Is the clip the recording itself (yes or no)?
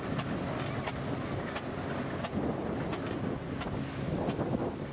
yes